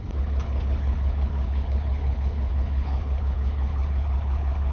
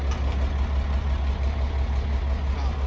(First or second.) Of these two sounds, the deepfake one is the first